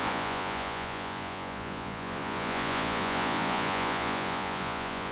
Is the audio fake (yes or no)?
yes